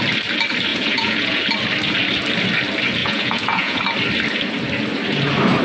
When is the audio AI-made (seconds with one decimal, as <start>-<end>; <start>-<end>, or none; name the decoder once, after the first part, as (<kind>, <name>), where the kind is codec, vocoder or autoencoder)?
0.7-1.4 (vocoder, Vocos); 3.0-3.8